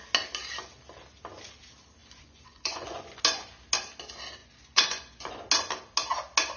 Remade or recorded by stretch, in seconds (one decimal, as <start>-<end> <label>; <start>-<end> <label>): 0.0-2.0 recorded; 2.0-3.2 remade; 3.2-4.4 recorded; 4.4-5.3 remade; 5.3-6.6 recorded